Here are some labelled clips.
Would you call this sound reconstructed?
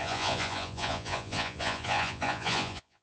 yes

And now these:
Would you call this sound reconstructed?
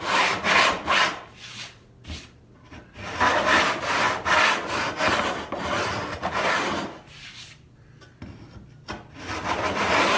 no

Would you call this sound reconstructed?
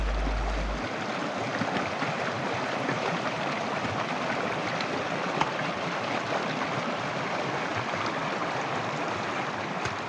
no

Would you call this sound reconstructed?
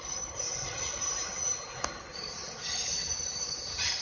no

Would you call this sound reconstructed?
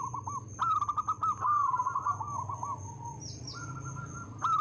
no